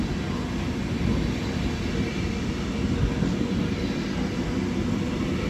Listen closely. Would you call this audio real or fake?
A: real